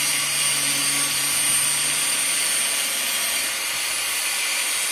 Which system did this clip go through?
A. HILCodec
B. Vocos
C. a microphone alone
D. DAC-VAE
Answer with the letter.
C